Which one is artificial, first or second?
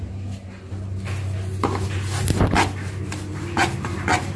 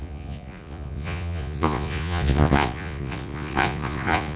second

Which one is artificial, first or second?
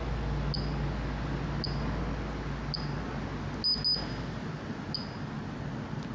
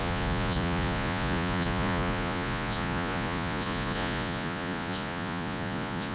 second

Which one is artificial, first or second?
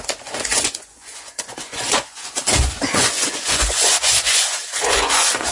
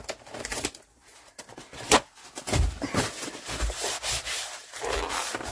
first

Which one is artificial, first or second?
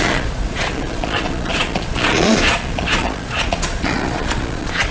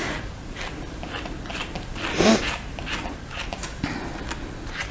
first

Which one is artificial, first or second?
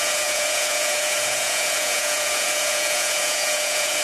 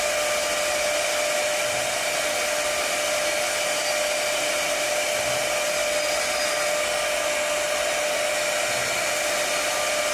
first